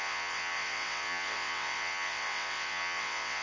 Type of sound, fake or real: fake